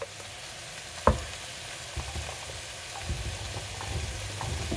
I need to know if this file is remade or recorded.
recorded